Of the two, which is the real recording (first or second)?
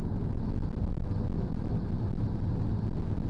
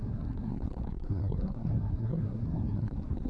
first